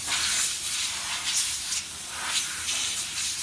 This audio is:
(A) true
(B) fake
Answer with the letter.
A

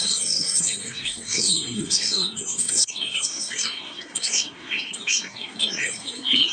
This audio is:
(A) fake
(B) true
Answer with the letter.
A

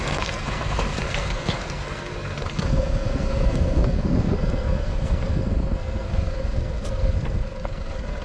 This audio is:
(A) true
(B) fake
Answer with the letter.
B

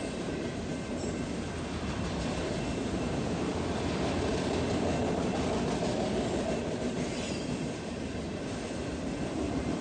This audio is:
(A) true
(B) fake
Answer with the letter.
B